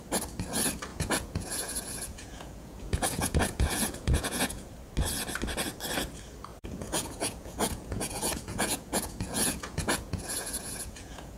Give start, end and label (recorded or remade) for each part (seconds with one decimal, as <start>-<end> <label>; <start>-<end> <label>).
0.0-0.9 recorded; 0.9-4.7 remade; 4.7-6.5 recorded; 6.5-11.4 remade